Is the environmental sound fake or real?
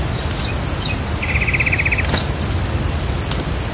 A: real